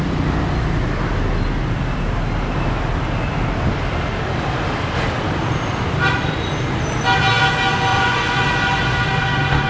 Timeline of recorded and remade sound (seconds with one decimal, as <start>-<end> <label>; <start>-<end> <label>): 0.0-7.9 recorded; 7.9-8.5 remade; 8.5-9.7 recorded